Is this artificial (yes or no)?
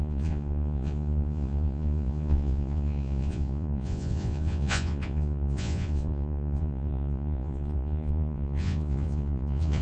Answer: yes